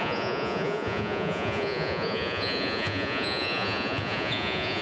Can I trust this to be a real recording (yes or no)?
no